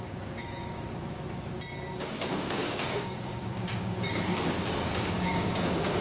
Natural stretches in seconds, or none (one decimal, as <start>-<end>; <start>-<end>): 1.2-2.0